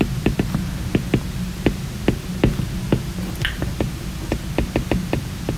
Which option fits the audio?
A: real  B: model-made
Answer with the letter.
A